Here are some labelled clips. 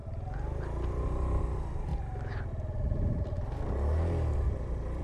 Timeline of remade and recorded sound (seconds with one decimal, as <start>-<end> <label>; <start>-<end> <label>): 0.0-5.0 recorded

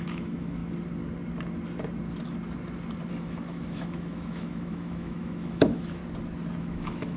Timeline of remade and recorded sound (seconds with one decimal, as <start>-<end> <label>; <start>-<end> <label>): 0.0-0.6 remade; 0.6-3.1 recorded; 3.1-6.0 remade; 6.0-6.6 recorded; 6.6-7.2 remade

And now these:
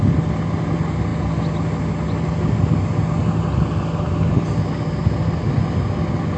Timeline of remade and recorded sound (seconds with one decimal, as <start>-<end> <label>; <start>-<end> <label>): 0.0-6.4 recorded

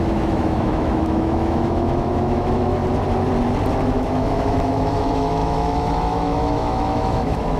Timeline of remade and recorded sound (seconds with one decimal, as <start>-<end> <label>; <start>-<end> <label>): 0.0-2.8 remade; 2.8-3.9 recorded; 3.9-7.6 remade